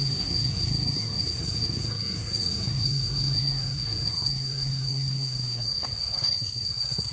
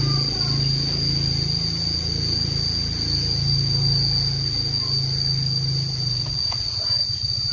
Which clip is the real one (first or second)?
second